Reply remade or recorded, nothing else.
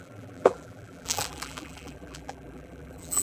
remade